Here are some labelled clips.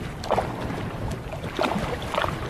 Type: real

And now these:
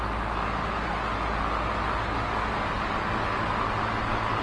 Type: real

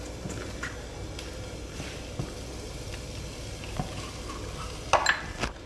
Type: real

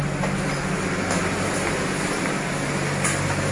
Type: real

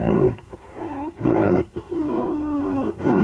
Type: fake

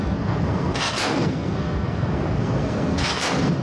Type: fake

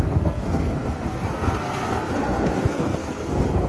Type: fake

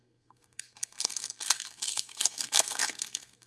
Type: fake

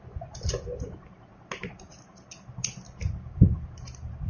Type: real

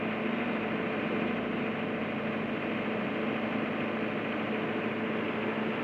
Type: real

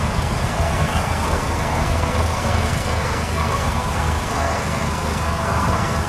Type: fake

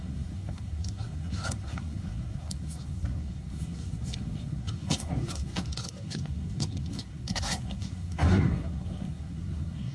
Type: fake